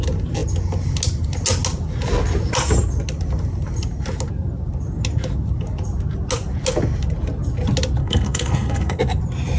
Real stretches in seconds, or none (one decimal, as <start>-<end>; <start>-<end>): 0.0-8.0; 9.0-9.6